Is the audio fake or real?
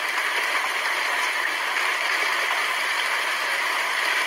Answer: real